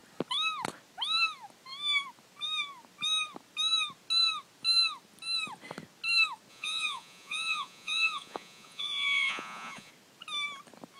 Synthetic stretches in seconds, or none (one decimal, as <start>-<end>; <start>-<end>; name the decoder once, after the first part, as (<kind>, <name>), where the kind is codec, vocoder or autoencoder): 6.5-9.9 (vocoder, Vocos)